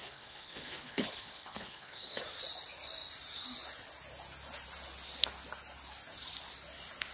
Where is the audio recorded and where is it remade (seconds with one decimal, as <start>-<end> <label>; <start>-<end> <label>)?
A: 0.0-2.2 remade; 2.2-7.1 recorded